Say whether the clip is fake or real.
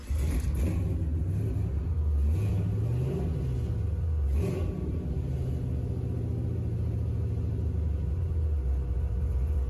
real